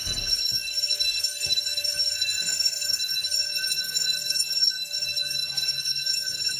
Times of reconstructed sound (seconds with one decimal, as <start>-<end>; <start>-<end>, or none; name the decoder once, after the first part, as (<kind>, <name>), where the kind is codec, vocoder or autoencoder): 0.0-6.6 (codec, SNAC)